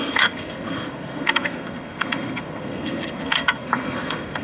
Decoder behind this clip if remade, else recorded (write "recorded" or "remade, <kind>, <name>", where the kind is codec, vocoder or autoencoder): remade, codec, SNAC